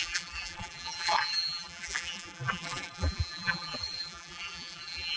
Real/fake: fake